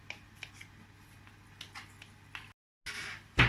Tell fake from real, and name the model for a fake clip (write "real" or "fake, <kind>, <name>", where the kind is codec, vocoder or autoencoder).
real